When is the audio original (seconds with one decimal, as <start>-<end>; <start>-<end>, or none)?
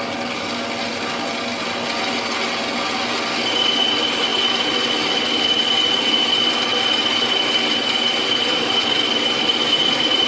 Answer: 0.0-10.3